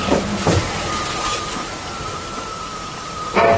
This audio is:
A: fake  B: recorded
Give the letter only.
B